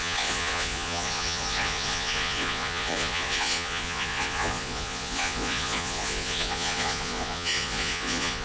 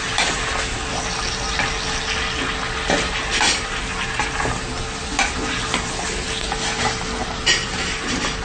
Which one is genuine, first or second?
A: second